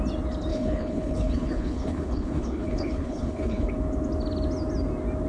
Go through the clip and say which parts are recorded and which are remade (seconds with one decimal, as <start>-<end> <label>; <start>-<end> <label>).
0.0-0.5 recorded; 0.5-3.7 remade; 3.7-5.3 recorded